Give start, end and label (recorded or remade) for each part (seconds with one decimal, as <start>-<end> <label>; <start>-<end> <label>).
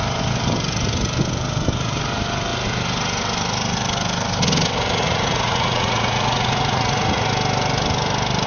0.0-5.0 recorded; 5.0-7.3 remade; 7.3-8.5 recorded